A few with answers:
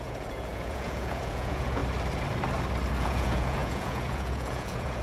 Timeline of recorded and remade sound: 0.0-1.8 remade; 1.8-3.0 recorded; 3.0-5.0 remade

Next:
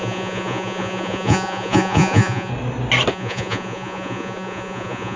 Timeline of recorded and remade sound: 0.0-2.5 remade; 2.5-3.1 recorded; 3.1-5.2 remade